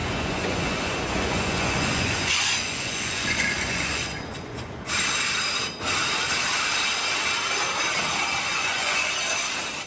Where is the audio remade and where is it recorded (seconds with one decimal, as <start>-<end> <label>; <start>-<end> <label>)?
0.0-4.9 remade; 4.9-8.5 recorded; 8.5-9.1 remade; 9.1-9.9 recorded